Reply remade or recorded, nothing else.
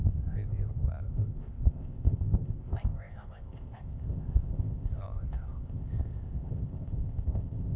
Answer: remade